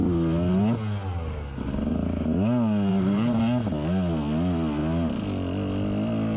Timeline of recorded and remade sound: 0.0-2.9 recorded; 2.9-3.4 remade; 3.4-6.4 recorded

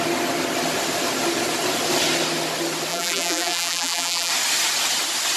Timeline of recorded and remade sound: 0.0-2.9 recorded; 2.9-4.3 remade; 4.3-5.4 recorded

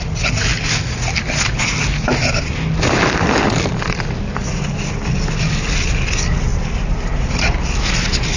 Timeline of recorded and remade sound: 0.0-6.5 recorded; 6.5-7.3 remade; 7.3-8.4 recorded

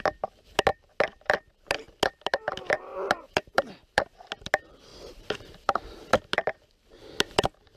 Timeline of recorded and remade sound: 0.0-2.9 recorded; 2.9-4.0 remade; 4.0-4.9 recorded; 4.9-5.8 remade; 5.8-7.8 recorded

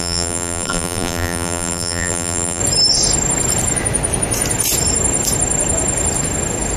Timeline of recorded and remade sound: 0.0-2.6 remade; 2.6-6.8 recorded

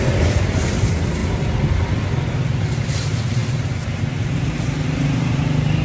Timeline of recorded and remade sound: 0.0-1.2 remade; 1.2-2.7 recorded; 2.7-3.4 remade; 3.4-4.0 recorded; 4.0-5.8 remade

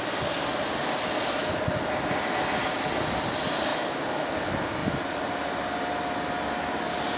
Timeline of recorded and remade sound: 0.0-3.7 recorded; 3.7-4.3 remade; 4.3-7.2 recorded

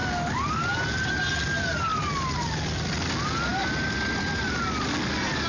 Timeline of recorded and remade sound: 0.0-5.5 recorded